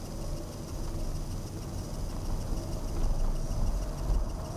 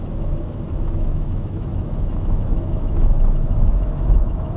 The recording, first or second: first